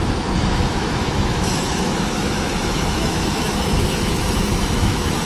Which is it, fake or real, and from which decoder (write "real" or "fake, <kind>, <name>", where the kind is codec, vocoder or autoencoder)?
fake, autoencoder, DAC-VAE